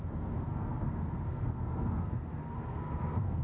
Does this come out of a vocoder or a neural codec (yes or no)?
yes